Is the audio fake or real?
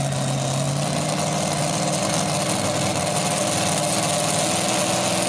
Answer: real